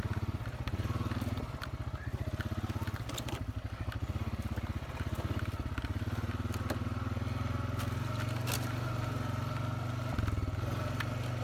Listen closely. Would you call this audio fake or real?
real